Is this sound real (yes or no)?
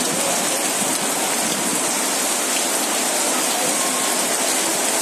yes